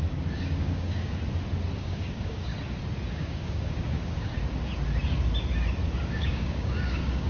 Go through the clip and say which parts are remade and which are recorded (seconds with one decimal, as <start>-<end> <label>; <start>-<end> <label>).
0.0-1.2 remade; 1.2-1.8 recorded; 1.8-2.5 remade; 2.5-3.1 recorded; 3.1-4.3 remade; 4.3-6.0 recorded; 6.0-7.3 remade